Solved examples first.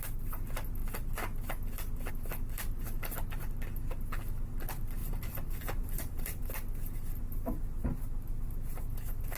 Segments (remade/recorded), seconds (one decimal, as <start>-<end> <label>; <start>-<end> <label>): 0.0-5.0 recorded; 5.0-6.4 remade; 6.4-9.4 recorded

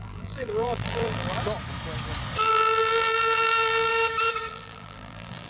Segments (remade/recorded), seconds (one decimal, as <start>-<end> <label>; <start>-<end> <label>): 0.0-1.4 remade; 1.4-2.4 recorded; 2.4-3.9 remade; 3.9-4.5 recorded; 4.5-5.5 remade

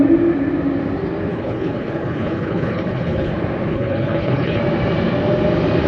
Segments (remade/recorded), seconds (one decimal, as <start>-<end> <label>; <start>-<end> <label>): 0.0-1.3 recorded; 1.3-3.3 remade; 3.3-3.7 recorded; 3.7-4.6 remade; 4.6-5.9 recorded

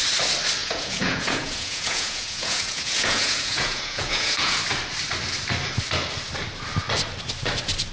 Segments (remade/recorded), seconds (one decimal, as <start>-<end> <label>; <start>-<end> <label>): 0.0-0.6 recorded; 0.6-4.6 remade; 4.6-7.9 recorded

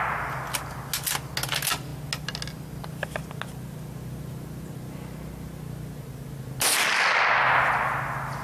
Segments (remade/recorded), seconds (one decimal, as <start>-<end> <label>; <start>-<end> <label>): 0.0-8.4 recorded